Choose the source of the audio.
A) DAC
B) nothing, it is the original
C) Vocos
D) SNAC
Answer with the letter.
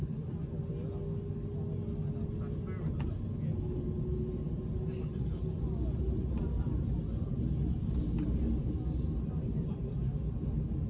B